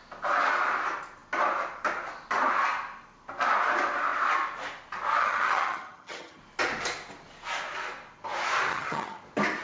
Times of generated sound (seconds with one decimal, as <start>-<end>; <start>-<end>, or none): 5.2-6.4; 8.7-9.2